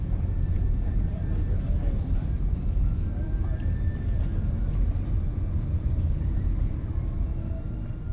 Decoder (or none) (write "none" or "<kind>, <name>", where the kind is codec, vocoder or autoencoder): none